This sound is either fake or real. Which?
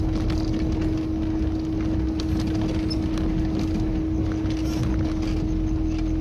real